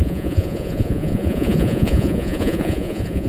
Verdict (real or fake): fake